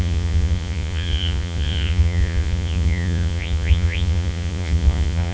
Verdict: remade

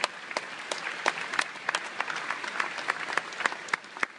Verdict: recorded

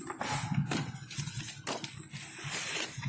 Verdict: recorded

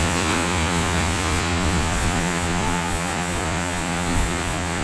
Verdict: remade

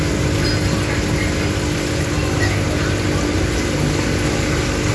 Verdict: recorded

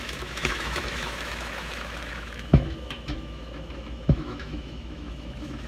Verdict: remade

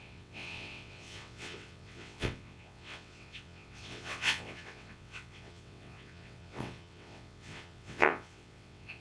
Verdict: remade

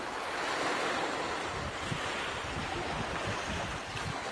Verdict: recorded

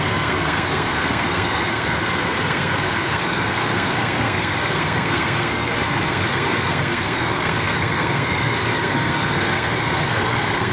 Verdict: remade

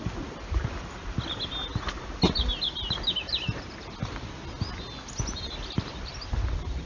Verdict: recorded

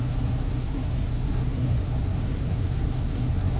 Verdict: remade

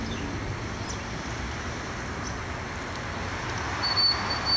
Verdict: recorded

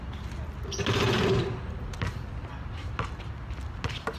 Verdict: recorded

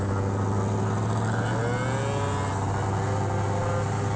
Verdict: recorded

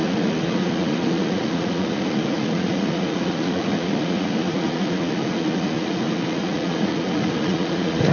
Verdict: remade